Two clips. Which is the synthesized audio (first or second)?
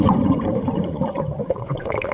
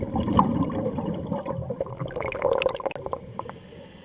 first